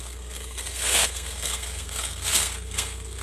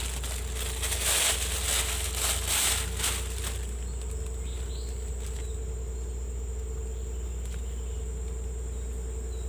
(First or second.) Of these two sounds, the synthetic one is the first